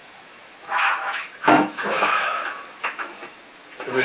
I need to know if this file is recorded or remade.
remade